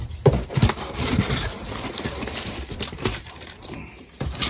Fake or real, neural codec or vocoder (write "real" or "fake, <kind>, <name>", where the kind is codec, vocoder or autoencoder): fake, vocoder, BigVGAN v2